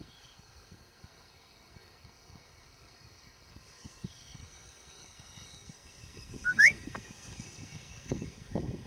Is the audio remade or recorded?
remade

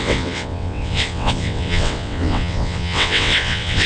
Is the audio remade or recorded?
remade